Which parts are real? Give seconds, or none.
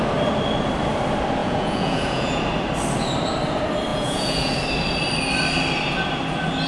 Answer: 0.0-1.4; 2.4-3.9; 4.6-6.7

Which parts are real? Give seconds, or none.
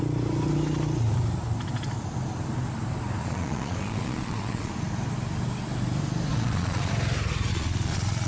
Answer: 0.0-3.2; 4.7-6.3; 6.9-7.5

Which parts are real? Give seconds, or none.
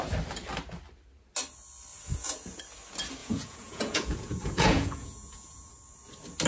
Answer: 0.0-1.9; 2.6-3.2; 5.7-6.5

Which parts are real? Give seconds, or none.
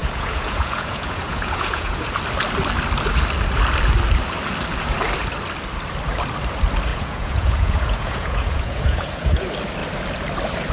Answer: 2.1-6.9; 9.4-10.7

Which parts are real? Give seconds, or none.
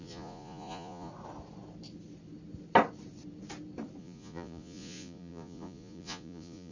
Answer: 1.1-4.0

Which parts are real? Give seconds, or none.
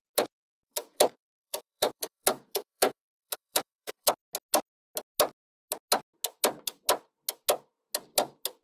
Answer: 0.0-0.4; 4.1-8.6